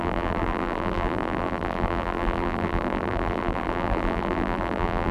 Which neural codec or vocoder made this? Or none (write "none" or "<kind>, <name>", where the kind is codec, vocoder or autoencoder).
vocoder, BigVGAN v2